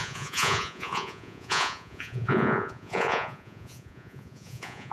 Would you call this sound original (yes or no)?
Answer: no